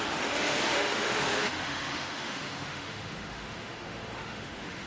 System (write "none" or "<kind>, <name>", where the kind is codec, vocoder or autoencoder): autoencoder, DAC-VAE